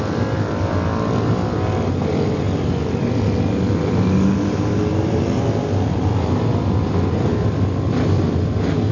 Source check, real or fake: real